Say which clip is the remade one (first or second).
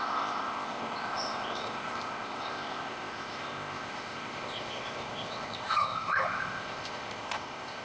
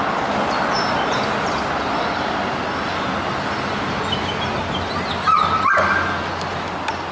first